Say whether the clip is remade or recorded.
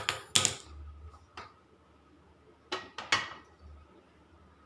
recorded